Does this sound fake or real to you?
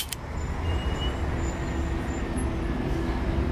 real